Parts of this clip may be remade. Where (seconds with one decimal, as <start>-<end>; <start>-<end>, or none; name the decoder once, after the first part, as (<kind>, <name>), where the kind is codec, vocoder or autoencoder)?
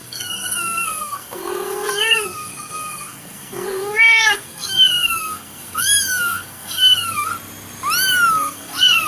0.0-7.3 (codec, SNAC); 8.3-9.1